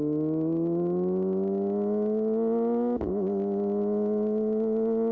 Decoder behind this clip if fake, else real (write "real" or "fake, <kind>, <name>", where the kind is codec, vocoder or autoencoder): real